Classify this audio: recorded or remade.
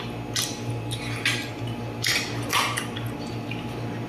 recorded